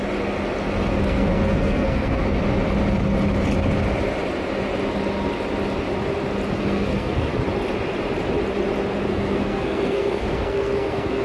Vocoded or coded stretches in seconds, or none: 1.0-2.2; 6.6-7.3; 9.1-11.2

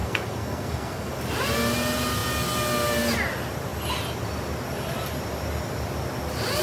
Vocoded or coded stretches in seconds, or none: 0.0-1.1

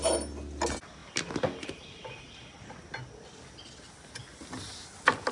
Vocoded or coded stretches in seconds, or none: none